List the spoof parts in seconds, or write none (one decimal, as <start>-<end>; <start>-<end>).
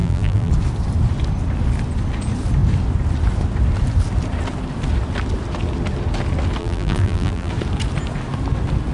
0.0-0.5; 6.6-7.5